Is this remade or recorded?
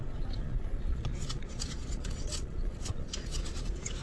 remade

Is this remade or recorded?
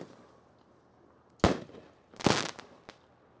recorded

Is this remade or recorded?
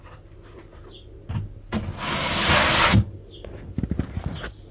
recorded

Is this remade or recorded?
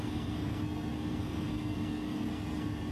remade